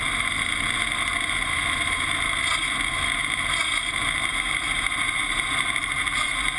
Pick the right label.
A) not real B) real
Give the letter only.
A